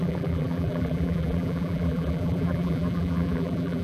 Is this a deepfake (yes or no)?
yes